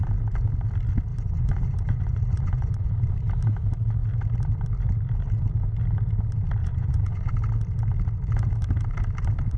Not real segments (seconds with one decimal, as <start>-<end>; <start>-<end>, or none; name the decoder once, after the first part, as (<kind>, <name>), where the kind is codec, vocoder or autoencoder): 1.1-2.9 (vocoder, Vocos); 6.6-7.3